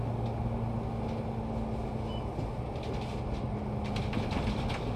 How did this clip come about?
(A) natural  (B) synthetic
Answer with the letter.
A